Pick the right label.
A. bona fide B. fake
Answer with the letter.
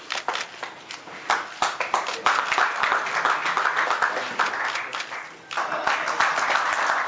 A